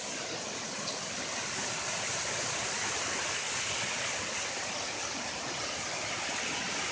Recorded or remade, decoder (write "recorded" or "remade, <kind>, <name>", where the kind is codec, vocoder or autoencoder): recorded